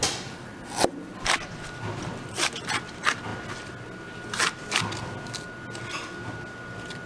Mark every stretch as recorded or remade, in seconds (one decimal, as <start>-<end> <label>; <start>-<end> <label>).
0.0-7.1 recorded